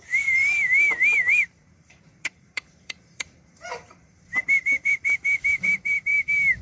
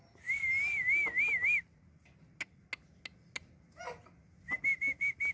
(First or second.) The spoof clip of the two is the first